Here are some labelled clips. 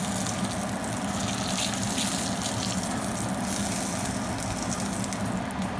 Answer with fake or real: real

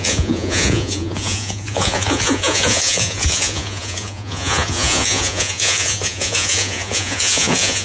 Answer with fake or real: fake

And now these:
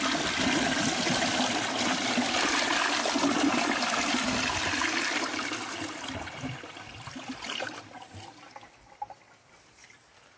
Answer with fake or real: real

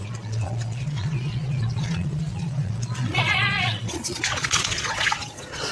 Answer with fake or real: fake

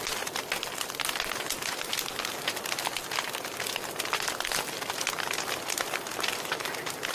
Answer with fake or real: real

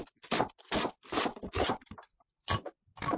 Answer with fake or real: real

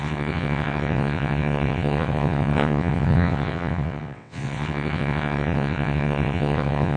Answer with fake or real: fake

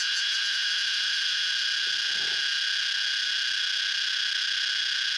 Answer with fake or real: real